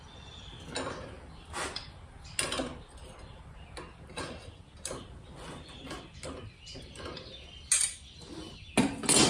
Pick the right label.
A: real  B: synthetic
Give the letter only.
A